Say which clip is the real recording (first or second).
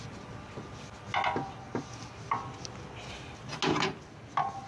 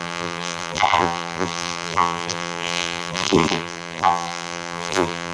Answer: first